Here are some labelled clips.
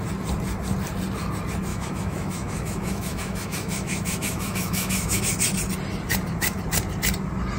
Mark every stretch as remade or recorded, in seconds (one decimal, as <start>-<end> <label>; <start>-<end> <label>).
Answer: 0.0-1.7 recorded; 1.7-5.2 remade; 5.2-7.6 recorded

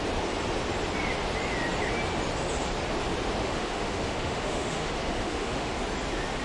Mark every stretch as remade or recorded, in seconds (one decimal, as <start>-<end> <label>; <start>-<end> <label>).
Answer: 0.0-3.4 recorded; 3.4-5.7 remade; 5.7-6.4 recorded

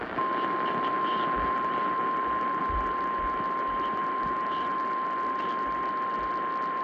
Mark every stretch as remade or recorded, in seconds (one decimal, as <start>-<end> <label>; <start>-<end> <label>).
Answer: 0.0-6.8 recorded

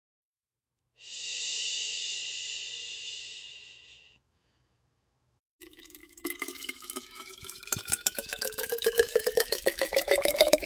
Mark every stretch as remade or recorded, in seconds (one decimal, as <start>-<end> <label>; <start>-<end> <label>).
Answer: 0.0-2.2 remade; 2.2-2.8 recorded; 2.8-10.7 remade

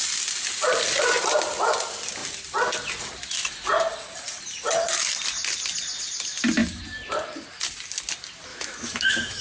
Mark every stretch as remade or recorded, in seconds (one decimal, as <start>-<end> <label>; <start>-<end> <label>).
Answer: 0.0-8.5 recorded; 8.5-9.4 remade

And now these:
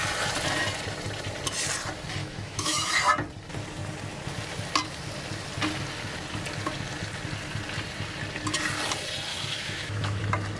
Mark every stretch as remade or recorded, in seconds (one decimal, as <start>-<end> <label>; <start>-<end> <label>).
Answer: 0.0-2.2 recorded; 2.2-3.0 remade; 3.0-9.3 recorded; 9.3-10.2 remade; 10.2-10.6 recorded